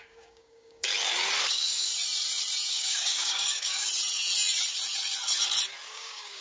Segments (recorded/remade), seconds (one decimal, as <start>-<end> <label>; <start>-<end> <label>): 0.0-0.9 remade; 0.9-1.5 recorded; 1.5-1.9 remade; 1.9-2.7 recorded; 2.7-3.9 remade; 3.9-5.9 recorded; 5.9-6.4 remade